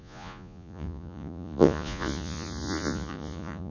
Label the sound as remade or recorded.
remade